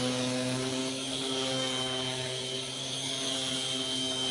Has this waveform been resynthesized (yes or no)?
yes